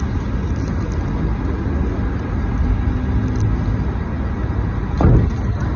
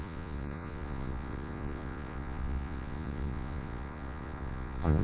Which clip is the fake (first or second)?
second